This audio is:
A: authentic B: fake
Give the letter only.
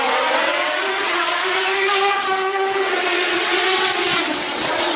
B